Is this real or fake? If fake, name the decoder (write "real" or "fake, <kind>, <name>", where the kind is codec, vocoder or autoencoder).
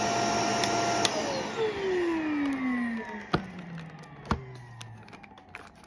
real